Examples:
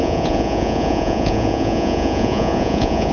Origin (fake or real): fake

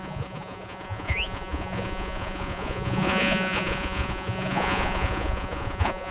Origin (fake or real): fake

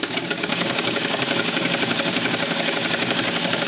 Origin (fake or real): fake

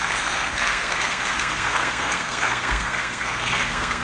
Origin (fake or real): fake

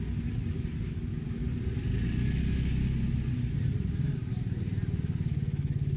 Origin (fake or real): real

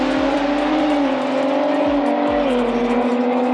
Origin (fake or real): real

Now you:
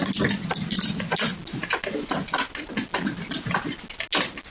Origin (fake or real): real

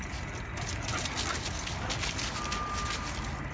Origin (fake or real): real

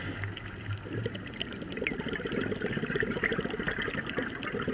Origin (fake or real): real